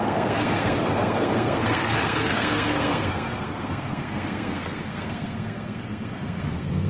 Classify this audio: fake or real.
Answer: fake